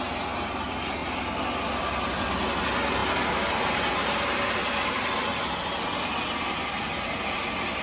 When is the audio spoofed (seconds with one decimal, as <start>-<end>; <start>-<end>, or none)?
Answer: none